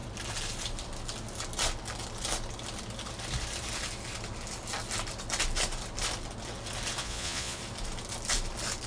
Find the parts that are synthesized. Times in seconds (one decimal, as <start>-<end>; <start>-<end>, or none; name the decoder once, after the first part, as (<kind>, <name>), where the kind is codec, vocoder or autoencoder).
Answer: 7.0-7.6 (vocoder, Vocos)

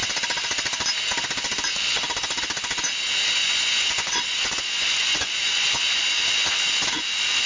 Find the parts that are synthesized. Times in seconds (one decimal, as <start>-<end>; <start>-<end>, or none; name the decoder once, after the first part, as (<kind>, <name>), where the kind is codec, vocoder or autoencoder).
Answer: 3.4-5.8 (vocoder, Vocos)

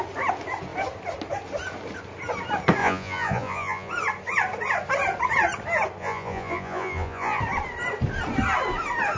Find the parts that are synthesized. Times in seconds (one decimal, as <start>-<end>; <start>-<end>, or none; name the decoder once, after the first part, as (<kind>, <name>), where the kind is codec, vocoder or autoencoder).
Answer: 2.8-3.9 (vocoder, Vocos); 6.0-7.4

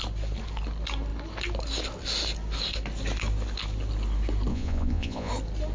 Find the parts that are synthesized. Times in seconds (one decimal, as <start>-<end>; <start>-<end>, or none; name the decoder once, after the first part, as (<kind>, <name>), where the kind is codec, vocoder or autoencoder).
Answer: 4.5-5.3 (vocoder, Vocos)

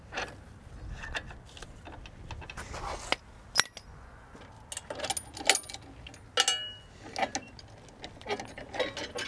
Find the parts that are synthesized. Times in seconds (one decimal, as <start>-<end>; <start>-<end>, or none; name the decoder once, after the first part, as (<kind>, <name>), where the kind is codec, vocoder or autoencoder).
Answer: 3.9-4.4 (vocoder, Vocos)

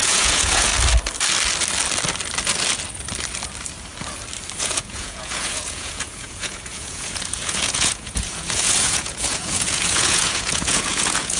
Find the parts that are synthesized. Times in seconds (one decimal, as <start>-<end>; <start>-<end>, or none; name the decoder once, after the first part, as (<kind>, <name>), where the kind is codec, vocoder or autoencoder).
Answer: 0.0-0.7 (vocoder, Vocos); 4.6-11.4

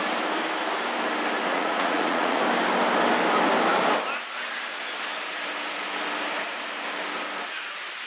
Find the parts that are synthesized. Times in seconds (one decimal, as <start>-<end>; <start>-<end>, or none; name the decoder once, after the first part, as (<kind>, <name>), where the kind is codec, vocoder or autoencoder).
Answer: 1.5-2.4 (vocoder, Vocos)